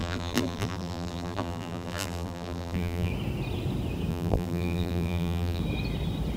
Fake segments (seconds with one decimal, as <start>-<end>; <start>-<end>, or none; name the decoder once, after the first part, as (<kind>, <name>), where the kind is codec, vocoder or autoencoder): 0.0-3.1 (vocoder, BigVGAN v2); 4.1-5.6